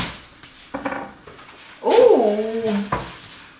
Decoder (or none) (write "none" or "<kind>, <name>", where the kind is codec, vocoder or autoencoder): none